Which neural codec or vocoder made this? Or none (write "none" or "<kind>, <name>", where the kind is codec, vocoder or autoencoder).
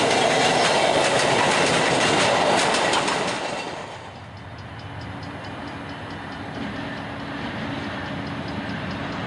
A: none